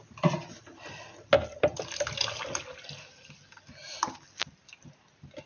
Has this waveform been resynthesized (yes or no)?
no